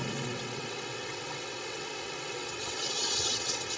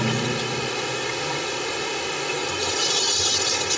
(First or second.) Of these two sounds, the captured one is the second